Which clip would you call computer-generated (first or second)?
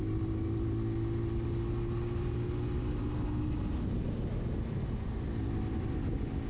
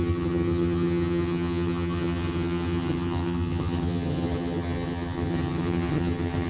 second